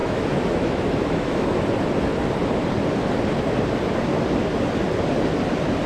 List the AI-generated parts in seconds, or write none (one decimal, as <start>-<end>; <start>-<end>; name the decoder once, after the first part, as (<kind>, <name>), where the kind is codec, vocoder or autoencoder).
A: 0.0-1.6 (autoencoder, DAC-VAE)